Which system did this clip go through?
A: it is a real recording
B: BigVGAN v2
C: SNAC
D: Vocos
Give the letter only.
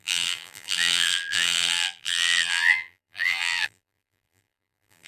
B